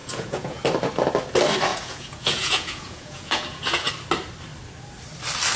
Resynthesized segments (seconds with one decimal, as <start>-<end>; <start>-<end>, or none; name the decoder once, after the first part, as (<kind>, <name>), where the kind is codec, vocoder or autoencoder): 0.0-0.6 (vocoder, Vocos); 1.7-3.9